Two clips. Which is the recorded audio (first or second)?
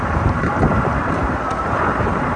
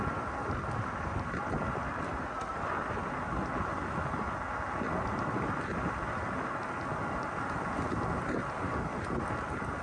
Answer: second